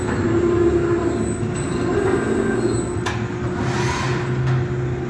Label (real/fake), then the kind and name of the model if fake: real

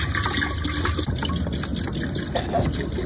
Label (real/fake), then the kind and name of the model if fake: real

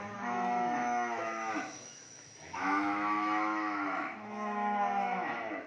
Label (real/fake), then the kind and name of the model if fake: fake, autoencoder, DAC-VAE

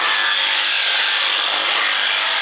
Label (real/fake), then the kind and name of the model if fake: real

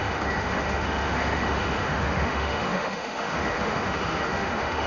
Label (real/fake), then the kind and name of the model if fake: fake, autoencoder, DAC-VAE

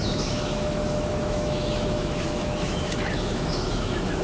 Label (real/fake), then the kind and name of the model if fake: fake, autoencoder, DAC-VAE